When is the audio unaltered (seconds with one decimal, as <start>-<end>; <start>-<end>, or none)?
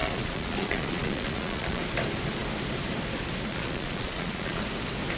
1.8-3.5; 4.6-5.2